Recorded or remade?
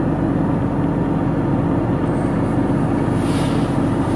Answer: recorded